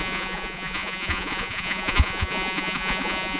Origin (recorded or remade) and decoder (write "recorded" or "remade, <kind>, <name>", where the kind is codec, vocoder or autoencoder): remade, vocoder, Vocos